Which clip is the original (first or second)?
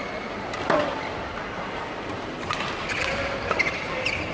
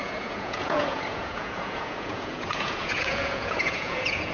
first